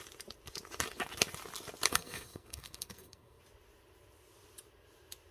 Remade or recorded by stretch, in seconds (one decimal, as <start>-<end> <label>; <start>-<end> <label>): 0.0-1.9 recorded; 1.9-3.4 remade; 3.4-5.3 recorded